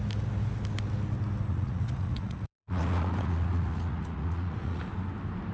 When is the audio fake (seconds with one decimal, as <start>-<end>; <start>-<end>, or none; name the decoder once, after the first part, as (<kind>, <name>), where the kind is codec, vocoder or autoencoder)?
1.5-4.8 (vocoder, Vocos)